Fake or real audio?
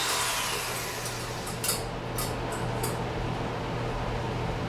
real